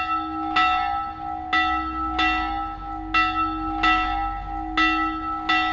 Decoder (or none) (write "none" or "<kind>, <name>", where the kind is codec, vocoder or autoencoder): none